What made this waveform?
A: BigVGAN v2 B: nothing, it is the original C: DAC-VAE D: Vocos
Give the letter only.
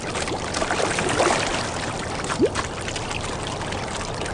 B